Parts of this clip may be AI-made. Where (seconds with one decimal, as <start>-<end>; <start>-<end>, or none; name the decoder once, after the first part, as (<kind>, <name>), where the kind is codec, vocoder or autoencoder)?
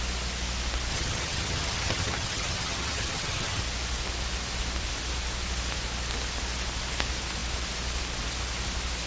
0.9-3.6 (vocoder, HiFi-GAN)